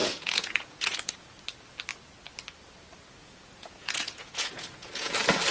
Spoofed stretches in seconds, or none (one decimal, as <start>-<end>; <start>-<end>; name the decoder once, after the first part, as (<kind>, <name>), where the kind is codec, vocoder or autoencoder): 0.0-1.3 (vocoder, Vocos); 3.2-5.1